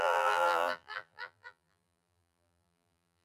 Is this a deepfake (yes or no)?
yes